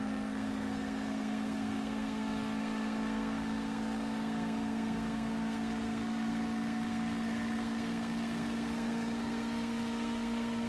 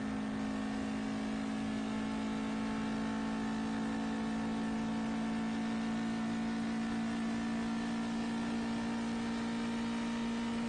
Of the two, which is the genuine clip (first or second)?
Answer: second